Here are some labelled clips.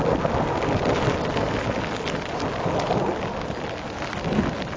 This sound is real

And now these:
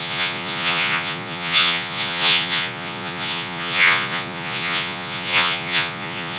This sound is fake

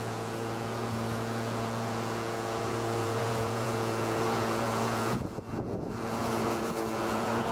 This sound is fake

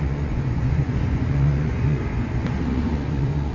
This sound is fake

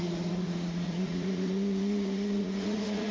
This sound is fake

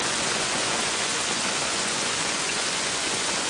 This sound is fake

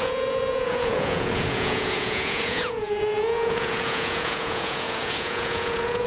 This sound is fake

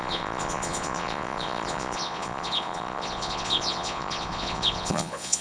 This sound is fake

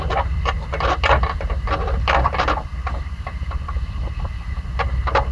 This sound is real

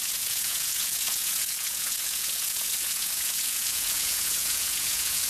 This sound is fake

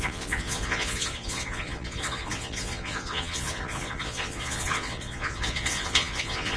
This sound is fake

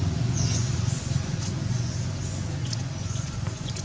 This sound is fake